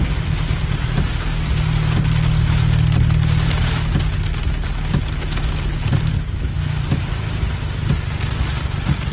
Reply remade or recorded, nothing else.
recorded